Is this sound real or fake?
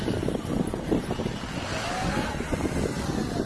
real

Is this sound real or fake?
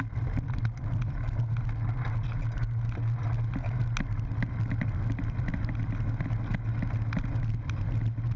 real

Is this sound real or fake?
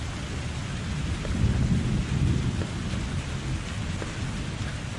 real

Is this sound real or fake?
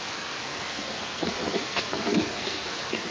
fake